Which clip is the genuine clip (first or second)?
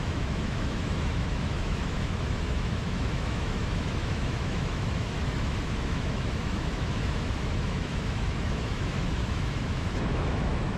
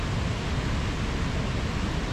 second